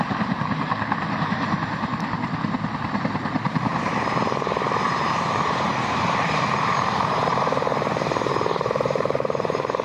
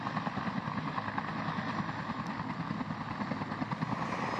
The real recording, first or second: second